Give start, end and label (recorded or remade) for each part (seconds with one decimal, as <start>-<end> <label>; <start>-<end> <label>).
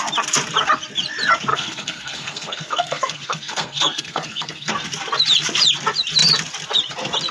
0.0-1.5 recorded; 1.5-4.7 remade; 4.7-7.3 recorded